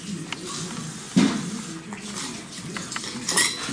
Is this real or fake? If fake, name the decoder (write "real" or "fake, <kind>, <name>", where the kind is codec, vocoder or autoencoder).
real